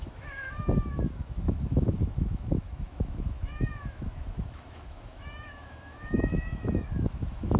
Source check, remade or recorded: remade